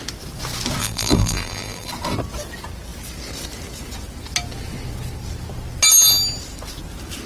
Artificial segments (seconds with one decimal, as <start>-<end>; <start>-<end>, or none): 0.8-1.9